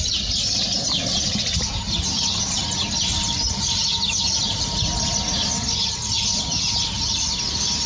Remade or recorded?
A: recorded